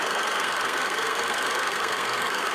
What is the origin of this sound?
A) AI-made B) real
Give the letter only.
A